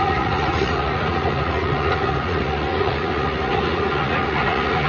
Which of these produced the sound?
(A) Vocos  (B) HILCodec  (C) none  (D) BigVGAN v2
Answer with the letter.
A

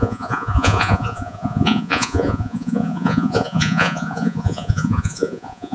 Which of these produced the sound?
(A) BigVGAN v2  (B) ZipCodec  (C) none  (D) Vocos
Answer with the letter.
D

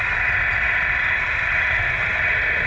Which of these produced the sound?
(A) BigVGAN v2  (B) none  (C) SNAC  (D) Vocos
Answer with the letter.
B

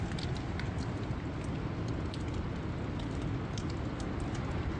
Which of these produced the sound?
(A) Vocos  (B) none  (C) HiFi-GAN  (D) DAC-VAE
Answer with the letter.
B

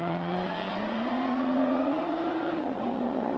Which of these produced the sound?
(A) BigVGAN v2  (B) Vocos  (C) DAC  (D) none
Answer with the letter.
B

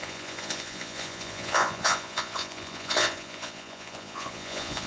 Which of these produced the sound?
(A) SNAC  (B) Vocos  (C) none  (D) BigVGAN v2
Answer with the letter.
B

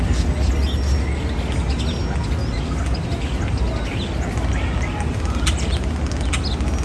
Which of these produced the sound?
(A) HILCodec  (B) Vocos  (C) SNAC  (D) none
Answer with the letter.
D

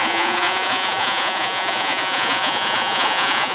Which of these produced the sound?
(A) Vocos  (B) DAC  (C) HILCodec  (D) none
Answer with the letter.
A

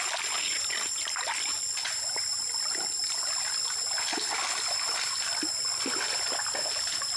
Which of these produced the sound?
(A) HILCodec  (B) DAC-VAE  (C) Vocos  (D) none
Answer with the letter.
D